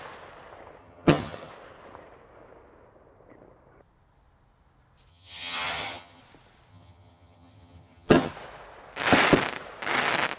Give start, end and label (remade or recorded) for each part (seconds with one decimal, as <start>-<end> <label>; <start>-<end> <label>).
0.0-0.8 recorded; 0.8-1.5 remade; 1.5-5.1 recorded; 5.1-6.2 remade; 6.2-6.7 recorded; 6.7-8.3 remade; 8.3-10.4 recorded